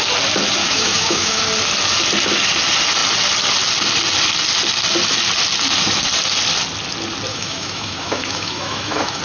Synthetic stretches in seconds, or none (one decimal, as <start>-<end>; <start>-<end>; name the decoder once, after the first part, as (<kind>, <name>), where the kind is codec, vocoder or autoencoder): 0.6-1.4 (autoencoder, DAC-VAE); 7.3-9.2